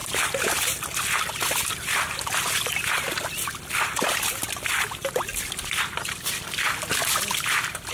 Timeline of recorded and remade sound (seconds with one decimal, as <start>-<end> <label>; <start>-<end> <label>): 0.0-1.6 recorded; 1.6-5.3 remade; 5.3-7.1 recorded; 7.1-7.9 remade